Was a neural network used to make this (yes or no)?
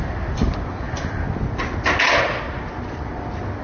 no